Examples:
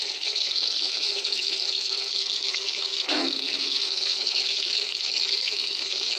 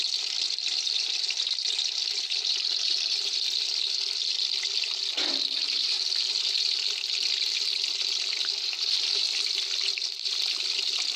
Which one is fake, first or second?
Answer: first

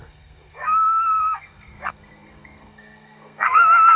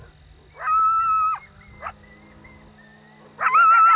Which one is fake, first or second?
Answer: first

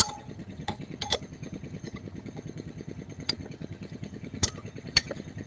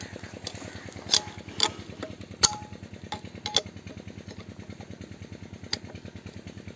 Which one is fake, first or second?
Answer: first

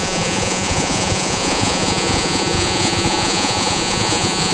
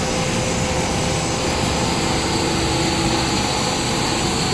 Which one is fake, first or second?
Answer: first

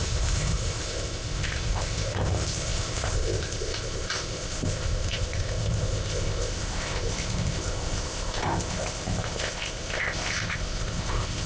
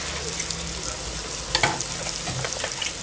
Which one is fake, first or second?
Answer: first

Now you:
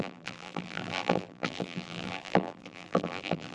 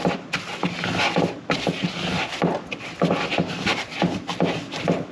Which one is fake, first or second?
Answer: first